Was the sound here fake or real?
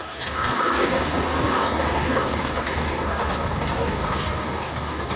fake